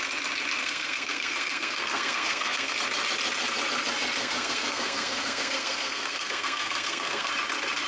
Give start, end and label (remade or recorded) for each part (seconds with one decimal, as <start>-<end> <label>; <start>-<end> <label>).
0.0-0.6 recorded; 0.6-2.7 remade; 2.7-4.2 recorded; 4.2-7.3 remade; 7.3-7.9 recorded